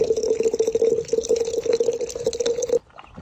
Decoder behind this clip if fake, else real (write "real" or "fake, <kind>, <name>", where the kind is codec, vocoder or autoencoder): real